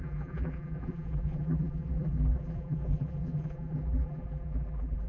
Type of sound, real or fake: fake